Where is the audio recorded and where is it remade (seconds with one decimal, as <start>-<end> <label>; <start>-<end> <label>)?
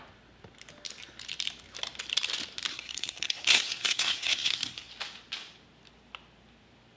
0.0-2.7 recorded; 2.7-4.9 remade; 4.9-7.0 recorded